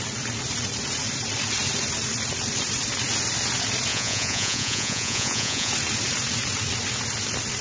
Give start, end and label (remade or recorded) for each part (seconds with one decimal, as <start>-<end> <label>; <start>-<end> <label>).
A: 0.0-3.9 recorded; 3.9-5.7 remade; 5.7-7.6 recorded